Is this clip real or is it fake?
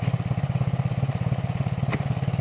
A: real